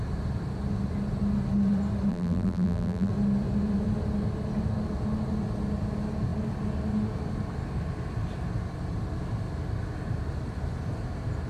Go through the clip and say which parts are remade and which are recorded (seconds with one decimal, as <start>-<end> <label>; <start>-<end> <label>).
0.0-2.1 recorded; 2.1-3.1 remade; 3.1-11.5 recorded